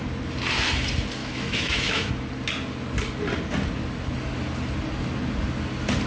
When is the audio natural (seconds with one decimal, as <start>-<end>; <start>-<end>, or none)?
0.0-1.2; 2.1-6.1